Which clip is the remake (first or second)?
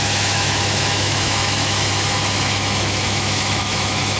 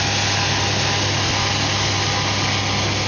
first